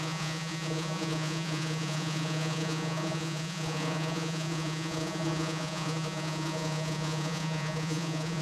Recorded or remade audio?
remade